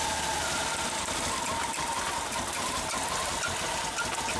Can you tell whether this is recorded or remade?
recorded